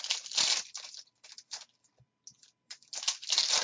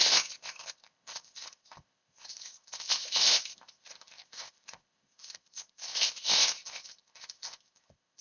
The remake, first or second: second